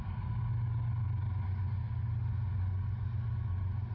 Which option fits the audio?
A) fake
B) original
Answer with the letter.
B